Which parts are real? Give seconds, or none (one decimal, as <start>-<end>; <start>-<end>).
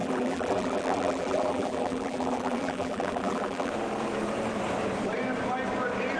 3.7-6.2